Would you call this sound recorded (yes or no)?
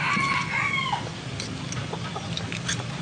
yes